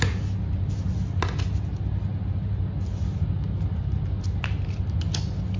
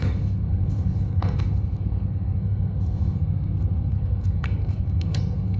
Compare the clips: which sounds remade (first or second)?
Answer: second